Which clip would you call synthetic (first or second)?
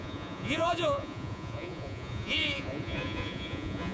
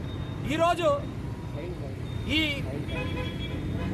first